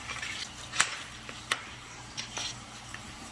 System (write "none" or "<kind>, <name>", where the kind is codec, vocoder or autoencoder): vocoder, BigVGAN v2